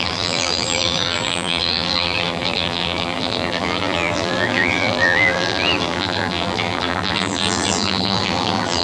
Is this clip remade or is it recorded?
remade